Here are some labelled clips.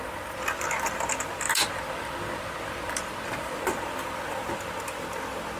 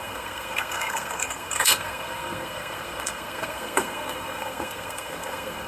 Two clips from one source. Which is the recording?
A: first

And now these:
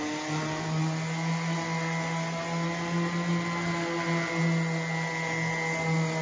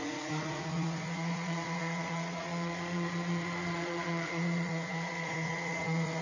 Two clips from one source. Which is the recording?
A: first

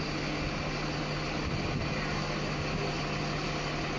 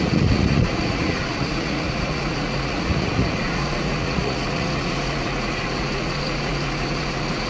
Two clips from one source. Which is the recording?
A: first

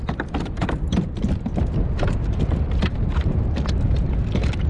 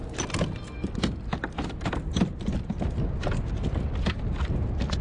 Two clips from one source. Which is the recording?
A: second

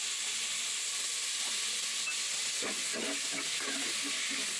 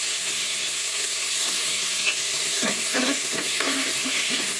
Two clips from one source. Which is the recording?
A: first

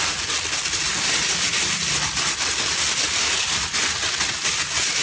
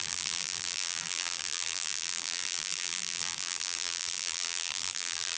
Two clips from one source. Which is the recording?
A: first